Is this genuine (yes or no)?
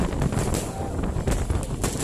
no